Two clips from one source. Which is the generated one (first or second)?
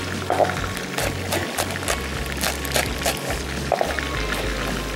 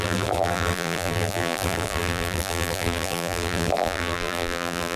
second